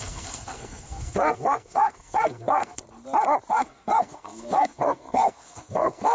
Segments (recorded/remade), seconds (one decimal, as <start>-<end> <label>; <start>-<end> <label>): 0.0-2.8 remade; 2.8-3.5 recorded; 3.5-6.1 remade